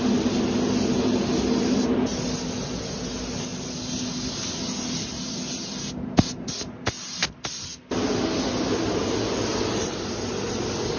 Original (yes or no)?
yes